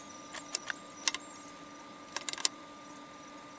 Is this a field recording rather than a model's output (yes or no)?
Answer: yes